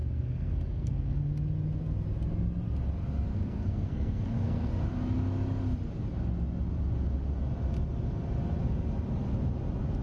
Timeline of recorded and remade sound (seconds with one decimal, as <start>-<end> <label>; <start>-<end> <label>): 0.0-1.2 remade; 1.2-3.3 recorded; 3.3-4.7 remade; 4.7-10.0 recorded